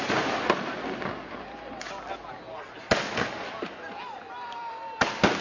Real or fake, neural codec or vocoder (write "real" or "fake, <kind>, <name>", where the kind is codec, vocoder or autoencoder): real